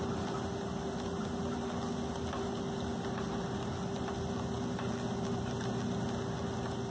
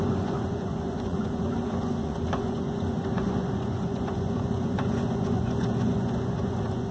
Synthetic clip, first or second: second